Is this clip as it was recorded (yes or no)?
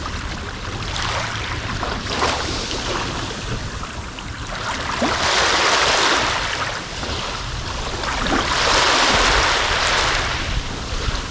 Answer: yes